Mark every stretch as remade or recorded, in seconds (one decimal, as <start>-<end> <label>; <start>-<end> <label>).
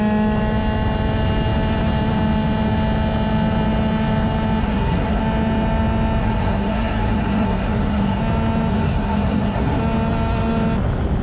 0.0-4.6 recorded; 4.6-5.2 remade; 5.2-6.2 recorded; 6.2-8.2 remade; 8.2-8.7 recorded; 8.7-9.8 remade; 9.8-11.2 recorded